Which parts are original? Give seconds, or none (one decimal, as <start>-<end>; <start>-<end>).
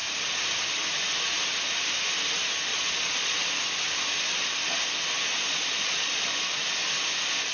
0.0-2.7; 3.4-5.3; 6.2-7.5